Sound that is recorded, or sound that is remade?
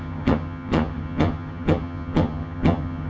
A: remade